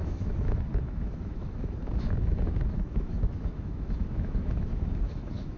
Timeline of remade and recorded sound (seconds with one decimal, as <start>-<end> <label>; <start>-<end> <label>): 0.0-5.6 remade